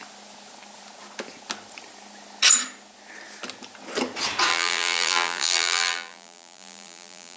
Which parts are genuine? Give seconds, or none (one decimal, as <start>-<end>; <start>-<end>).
0.0-4.5